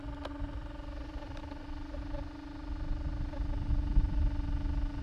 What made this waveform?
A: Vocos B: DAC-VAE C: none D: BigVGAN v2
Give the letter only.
C